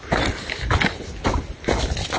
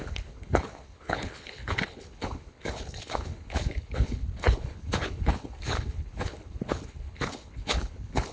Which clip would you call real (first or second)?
first